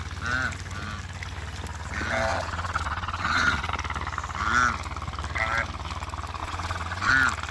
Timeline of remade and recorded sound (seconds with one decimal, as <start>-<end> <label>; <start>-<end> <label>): 0.0-2.3 recorded; 2.3-3.7 remade; 3.7-6.4 recorded; 6.4-7.1 remade; 7.1-7.5 recorded